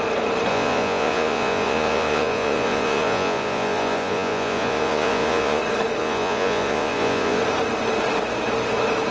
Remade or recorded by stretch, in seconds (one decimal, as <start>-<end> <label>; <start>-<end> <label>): 0.0-0.5 recorded; 0.5-5.6 remade; 5.6-6.0 recorded; 6.0-7.4 remade; 7.4-9.1 recorded